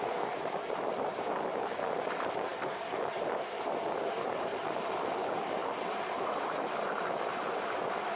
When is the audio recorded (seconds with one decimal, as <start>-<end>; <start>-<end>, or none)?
0.0-8.2